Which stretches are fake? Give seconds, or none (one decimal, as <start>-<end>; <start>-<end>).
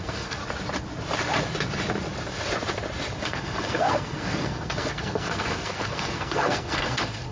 0.0-0.4; 3.2-7.3